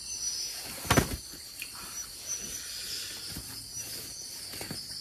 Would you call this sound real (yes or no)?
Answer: yes